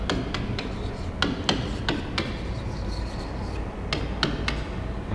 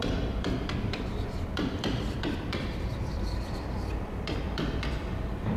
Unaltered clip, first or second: first